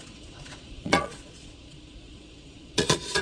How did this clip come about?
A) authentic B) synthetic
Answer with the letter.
B